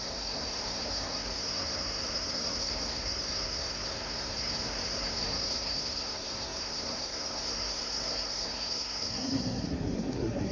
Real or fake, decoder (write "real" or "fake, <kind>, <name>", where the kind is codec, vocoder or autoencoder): fake, codec, SNAC